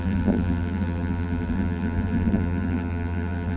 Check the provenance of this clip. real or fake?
fake